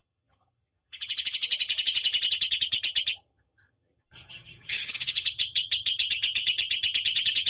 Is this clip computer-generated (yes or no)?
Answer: yes